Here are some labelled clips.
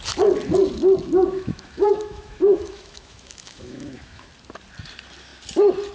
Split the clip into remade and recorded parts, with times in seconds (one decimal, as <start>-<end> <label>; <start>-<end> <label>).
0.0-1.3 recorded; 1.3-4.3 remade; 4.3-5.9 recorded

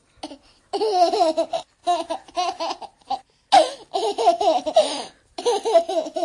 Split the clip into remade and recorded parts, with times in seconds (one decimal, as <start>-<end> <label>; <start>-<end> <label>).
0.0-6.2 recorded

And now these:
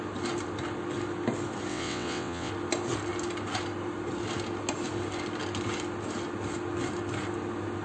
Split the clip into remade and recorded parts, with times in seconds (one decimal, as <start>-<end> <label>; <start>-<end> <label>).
0.0-1.7 recorded; 1.7-2.5 remade; 2.5-7.8 recorded

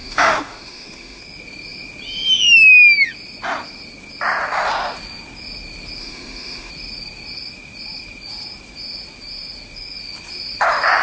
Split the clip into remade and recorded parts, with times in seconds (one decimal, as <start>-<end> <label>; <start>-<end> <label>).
0.0-1.2 remade; 1.2-6.0 recorded; 6.0-6.7 remade; 6.7-11.0 recorded

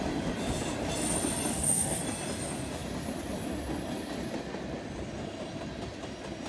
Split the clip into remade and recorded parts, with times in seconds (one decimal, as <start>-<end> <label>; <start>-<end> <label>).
0.0-1.5 recorded; 1.5-2.0 remade; 2.0-6.5 recorded

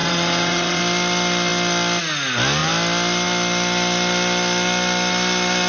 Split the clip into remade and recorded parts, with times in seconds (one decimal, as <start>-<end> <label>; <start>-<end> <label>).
0.0-0.8 remade; 0.8-5.7 recorded